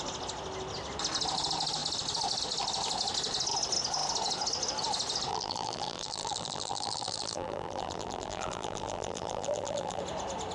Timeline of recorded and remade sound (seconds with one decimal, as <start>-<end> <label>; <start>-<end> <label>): 0.0-5.3 recorded; 5.3-10.0 remade; 10.0-10.5 recorded